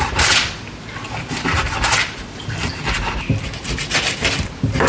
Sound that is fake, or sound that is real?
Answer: real